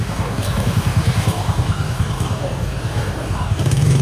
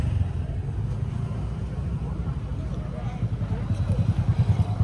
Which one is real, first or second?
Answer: second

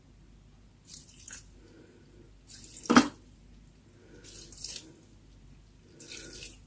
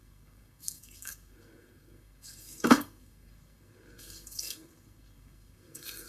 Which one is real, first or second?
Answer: first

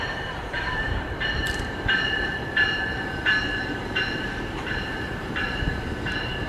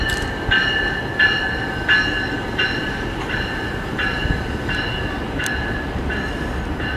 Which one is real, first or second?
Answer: second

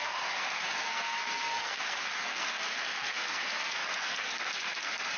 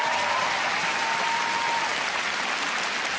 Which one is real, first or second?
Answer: second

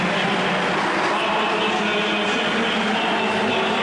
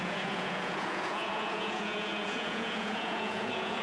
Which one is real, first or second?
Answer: first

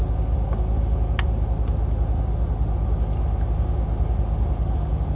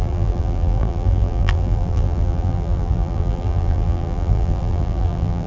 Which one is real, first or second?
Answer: first